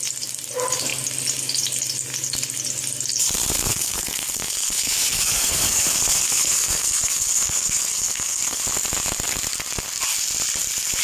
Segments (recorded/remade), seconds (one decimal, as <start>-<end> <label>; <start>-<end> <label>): 0.0-3.5 recorded; 3.5-8.6 remade; 8.6-11.0 recorded